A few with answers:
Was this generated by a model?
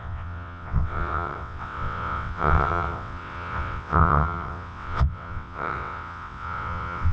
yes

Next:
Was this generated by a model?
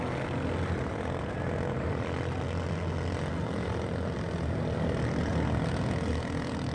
no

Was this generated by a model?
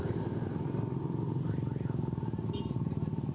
no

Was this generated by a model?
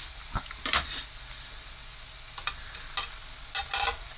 no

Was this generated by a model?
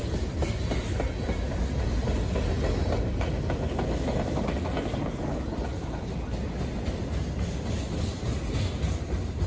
no